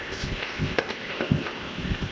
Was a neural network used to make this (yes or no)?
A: yes